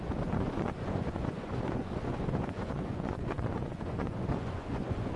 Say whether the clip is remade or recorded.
remade